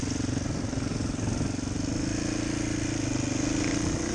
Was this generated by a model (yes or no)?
no